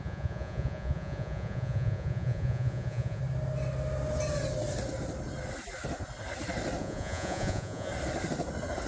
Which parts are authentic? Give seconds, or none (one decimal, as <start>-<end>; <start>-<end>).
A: 3.2-6.8; 7.9-8.9